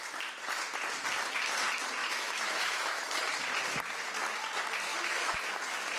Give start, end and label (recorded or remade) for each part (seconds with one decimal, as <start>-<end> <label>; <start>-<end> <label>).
0.0-2.0 recorded; 2.0-3.3 remade; 3.3-4.9 recorded; 4.9-5.4 remade; 5.4-6.0 recorded